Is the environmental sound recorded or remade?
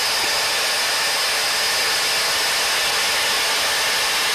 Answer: recorded